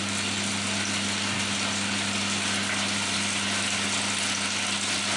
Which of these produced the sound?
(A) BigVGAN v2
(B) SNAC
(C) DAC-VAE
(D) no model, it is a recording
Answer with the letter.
D